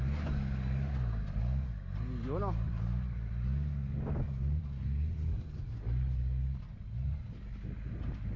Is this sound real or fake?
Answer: real